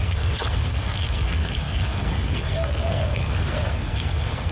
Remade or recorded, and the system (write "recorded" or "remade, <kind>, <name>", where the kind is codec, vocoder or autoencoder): remade, codec, SNAC